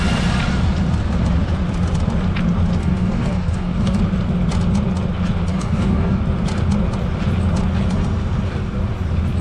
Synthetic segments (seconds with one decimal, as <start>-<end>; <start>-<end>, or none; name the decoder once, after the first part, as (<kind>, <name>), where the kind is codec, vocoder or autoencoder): 2.8-4.0 (codec, DAC); 5.5-6.2